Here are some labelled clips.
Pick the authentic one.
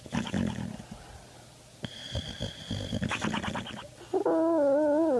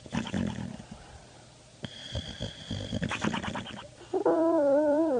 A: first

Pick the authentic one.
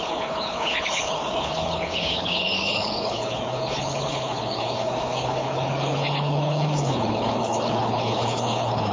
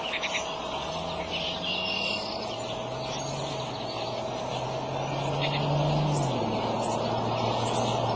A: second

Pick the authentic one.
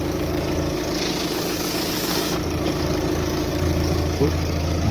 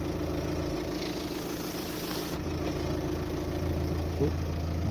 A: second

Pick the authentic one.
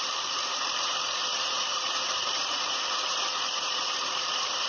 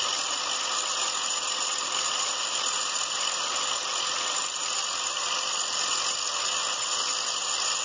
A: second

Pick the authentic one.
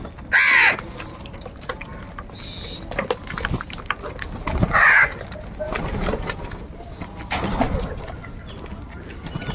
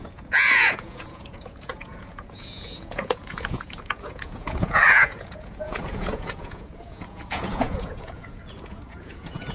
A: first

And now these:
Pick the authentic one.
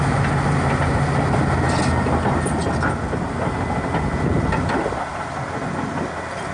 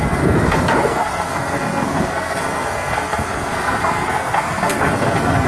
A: first